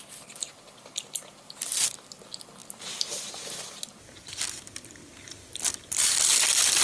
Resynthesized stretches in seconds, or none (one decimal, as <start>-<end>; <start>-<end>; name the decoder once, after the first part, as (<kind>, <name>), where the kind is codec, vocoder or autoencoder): none

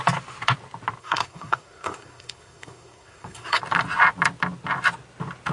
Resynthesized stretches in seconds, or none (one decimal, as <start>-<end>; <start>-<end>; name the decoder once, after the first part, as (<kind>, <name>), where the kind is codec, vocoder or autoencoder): 1.0-3.6 (codec, SNAC)

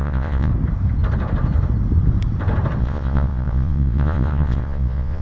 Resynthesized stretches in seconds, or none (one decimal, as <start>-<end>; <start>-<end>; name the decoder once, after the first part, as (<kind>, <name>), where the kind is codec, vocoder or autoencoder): 0.0-0.5 (vocoder, Vocos); 2.8-5.2

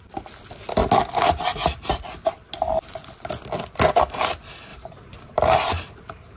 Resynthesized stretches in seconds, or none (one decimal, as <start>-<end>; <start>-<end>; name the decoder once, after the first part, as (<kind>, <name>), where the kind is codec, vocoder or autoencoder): 4.7-6.4 (vocoder, BigVGAN v2)